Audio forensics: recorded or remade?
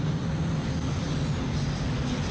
recorded